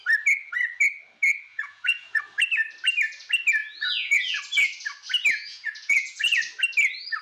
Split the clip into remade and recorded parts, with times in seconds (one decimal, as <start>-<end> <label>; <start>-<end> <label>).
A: 0.0-1.5 recorded; 1.5-2.2 remade; 2.2-3.6 recorded; 3.6-4.4 remade; 4.4-5.3 recorded; 5.3-6.4 remade; 6.4-7.2 recorded